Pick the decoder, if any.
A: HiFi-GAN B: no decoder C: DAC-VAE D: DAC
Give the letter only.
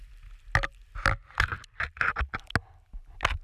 B